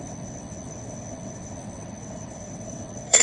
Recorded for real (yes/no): no